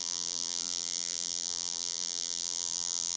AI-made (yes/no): yes